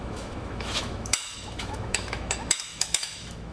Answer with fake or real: fake